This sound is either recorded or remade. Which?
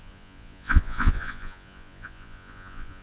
remade